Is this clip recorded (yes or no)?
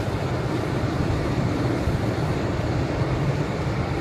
no